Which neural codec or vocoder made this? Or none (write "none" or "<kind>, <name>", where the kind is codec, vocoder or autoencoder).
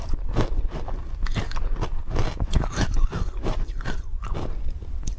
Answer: none